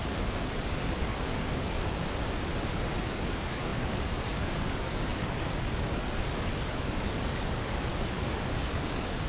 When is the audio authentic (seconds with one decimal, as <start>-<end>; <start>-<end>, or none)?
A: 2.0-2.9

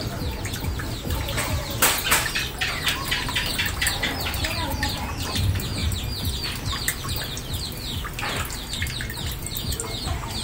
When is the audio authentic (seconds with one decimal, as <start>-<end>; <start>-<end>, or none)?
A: 0.0-10.4

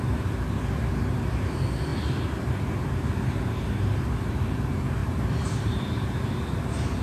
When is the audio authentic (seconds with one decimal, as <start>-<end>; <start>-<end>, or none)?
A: 0.0-5.0; 5.7-7.0